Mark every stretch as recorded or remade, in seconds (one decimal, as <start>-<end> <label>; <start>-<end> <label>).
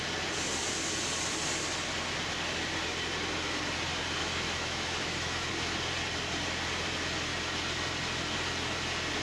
0.0-4.2 recorded; 4.2-5.5 remade; 5.5-9.2 recorded